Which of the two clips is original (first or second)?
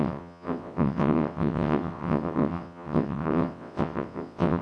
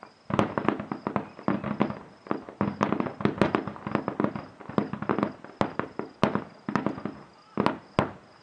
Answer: second